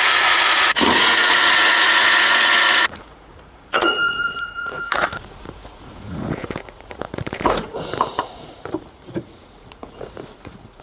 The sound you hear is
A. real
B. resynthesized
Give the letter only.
B